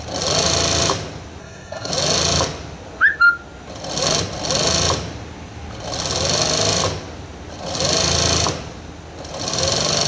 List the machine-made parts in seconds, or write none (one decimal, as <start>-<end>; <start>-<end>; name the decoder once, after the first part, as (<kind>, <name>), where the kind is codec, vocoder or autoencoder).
1.4-1.9 (codec, SNAC)